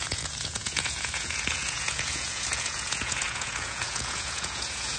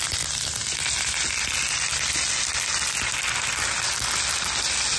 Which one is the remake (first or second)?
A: first